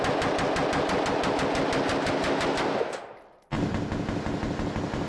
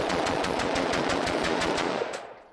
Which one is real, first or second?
first